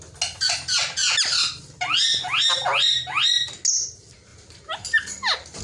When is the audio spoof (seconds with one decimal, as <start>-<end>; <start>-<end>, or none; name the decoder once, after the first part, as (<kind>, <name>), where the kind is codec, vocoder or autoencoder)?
4.3-5.6 (vocoder, BigVGAN v2)